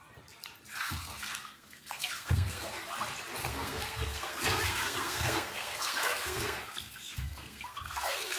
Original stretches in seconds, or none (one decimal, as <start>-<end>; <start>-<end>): 0.0-0.7; 2.8-3.4